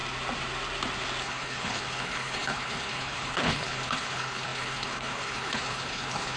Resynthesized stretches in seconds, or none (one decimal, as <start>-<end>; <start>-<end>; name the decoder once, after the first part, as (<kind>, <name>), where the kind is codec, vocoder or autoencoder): 1.2-6.4 (codec, HILCodec)